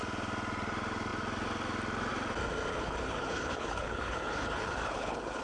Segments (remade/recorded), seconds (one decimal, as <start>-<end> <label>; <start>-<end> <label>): 0.0-2.7 recorded; 2.7-5.4 remade